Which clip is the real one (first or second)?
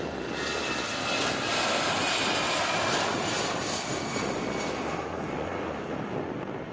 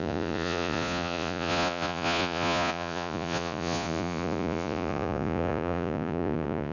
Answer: first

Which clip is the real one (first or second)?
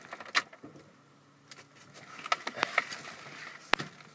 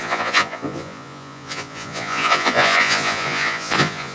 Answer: first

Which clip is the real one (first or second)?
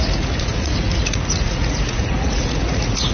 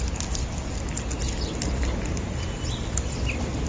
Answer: second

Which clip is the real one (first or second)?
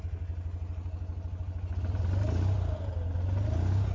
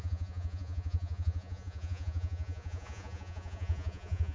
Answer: first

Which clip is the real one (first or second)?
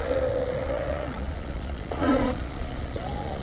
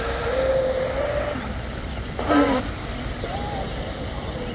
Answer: second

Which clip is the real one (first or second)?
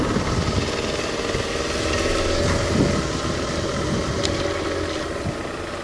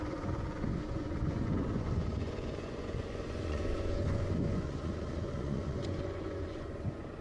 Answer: first